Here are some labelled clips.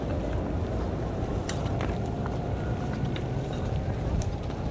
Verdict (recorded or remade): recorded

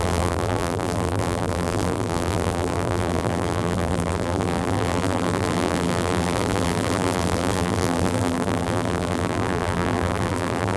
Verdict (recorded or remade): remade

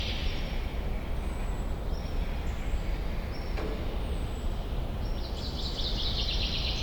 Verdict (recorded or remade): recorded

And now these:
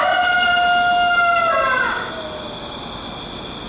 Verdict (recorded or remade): recorded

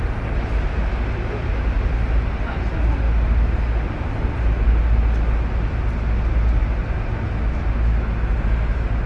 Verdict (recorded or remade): recorded